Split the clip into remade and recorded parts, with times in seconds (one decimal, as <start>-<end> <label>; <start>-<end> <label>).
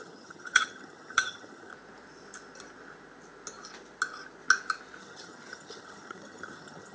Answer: 0.0-1.7 remade; 1.7-5.0 recorded; 5.0-6.9 remade